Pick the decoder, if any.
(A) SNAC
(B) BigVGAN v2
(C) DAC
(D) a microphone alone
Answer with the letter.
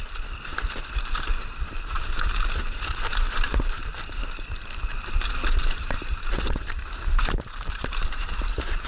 B